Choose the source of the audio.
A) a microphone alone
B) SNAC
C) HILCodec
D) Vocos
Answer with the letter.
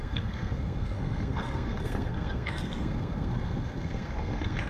B